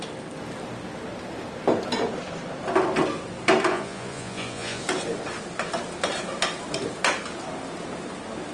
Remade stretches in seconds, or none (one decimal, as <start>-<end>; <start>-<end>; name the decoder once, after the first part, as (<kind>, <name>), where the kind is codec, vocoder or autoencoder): 3.7-4.8 (vocoder, Vocos)